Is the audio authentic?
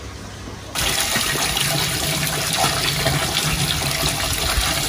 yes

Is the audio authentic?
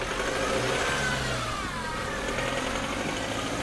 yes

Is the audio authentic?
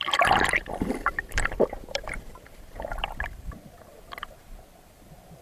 no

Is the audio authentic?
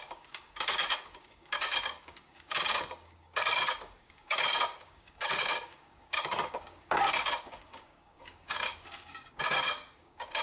no